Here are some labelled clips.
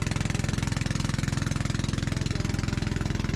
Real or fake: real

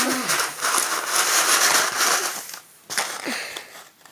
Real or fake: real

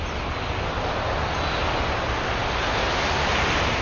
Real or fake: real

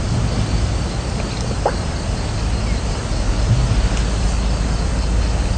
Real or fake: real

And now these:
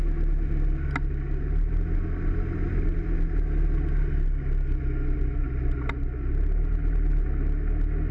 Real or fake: real